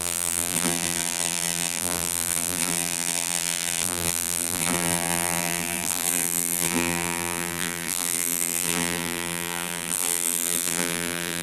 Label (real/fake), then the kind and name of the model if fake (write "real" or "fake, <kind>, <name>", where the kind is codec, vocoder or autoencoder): fake, vocoder, BigVGAN v2